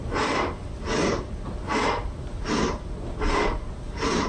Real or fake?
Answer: fake